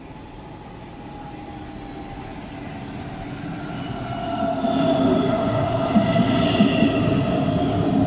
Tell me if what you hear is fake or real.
real